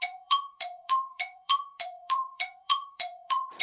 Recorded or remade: remade